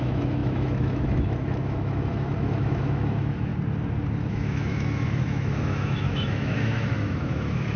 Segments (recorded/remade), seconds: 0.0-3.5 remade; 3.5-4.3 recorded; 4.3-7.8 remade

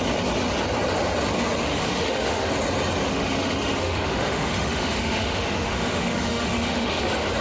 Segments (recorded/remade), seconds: 0.0-1.7 recorded; 1.7-2.5 remade; 2.5-3.1 recorded; 3.1-7.0 remade; 7.0-7.4 recorded